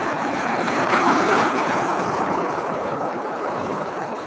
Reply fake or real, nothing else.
fake